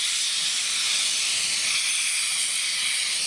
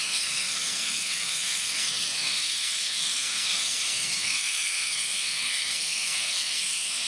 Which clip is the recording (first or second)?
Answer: first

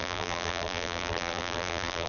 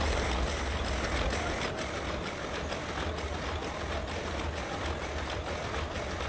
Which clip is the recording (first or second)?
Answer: second